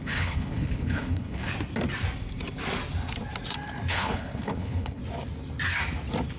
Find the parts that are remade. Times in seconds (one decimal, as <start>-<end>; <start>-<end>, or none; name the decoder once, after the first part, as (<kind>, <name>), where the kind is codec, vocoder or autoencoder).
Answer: 0.0-1.5 (codec, HILCodec); 3.9-5.0